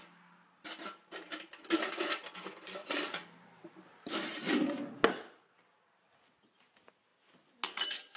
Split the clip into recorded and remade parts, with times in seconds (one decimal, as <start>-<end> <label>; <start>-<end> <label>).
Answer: 0.0-2.8 recorded; 2.8-4.8 remade; 4.8-8.2 recorded